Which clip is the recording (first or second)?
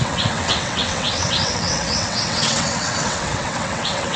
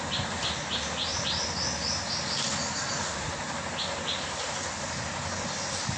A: second